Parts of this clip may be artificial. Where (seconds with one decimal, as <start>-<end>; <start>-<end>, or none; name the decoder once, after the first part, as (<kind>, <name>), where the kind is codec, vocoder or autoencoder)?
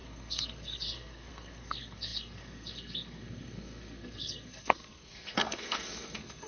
0.0-6.5 (codec, SNAC)